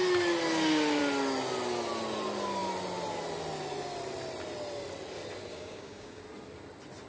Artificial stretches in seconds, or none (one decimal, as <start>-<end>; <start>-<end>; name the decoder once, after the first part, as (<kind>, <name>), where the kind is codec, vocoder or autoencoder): 5.5-6.2 (codec, DAC)